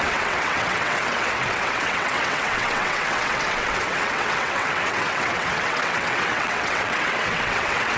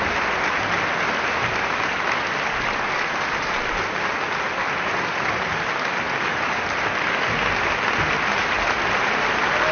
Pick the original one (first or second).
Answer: second